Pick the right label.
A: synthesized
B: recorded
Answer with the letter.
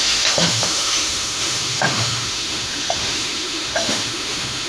A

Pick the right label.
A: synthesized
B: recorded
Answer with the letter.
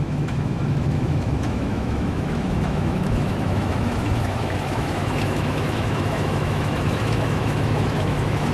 A